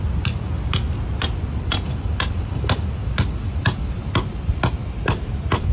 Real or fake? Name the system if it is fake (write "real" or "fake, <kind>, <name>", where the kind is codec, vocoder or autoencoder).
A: real